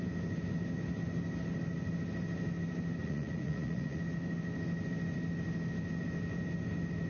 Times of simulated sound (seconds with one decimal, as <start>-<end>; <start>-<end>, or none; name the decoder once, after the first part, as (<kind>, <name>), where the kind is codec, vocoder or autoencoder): 3.0-4.0 (vocoder, Vocos)